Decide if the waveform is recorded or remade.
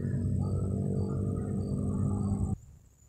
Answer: recorded